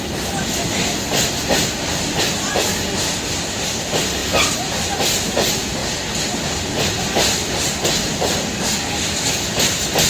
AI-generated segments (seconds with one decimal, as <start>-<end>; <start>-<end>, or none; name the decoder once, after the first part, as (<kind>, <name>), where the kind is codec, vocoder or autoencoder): none